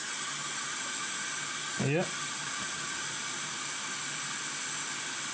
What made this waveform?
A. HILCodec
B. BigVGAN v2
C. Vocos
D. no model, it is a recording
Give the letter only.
D